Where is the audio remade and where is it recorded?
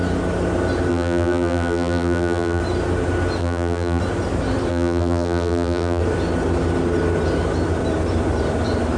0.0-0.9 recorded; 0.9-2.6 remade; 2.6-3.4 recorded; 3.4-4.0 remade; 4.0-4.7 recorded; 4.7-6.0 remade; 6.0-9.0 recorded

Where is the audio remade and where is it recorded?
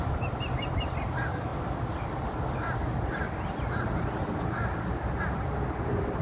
0.0-6.2 recorded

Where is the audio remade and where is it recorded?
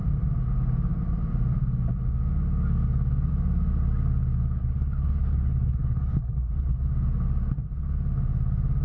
0.0-4.6 recorded; 4.6-6.5 remade; 6.5-8.8 recorded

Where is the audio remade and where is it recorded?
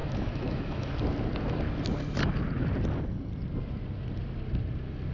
0.0-0.9 remade; 0.9-5.1 recorded